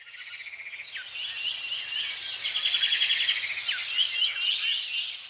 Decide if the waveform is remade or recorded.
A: recorded